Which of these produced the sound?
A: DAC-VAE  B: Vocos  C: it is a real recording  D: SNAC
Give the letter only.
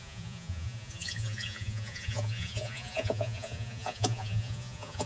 B